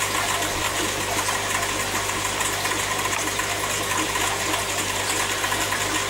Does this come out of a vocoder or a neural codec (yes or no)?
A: no